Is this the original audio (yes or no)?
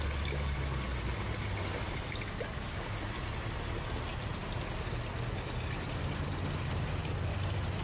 yes